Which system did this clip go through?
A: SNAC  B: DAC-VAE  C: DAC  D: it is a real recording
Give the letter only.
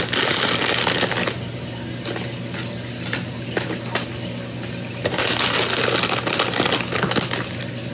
D